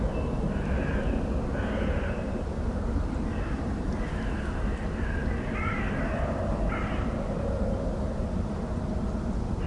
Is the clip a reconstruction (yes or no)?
no